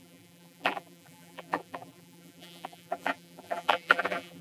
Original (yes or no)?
no